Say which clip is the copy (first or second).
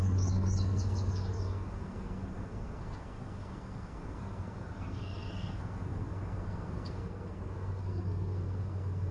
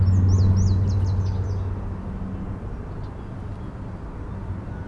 first